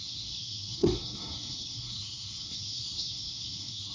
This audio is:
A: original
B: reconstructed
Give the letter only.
B